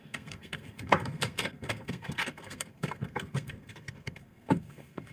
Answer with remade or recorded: remade